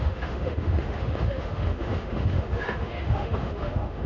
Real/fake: fake